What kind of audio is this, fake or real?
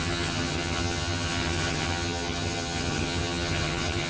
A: fake